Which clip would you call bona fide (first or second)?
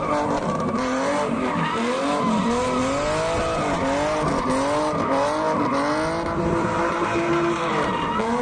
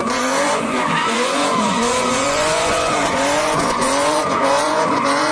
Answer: first